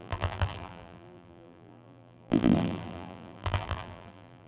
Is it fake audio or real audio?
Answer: fake